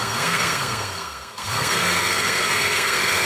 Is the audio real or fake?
fake